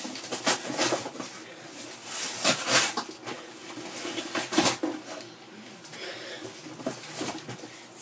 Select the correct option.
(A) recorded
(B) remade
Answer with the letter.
A